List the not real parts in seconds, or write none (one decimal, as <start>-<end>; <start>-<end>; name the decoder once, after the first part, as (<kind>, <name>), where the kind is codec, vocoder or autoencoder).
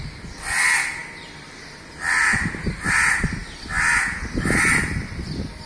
none